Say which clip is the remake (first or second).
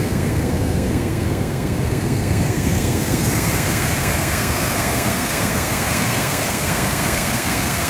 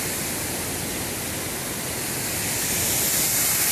first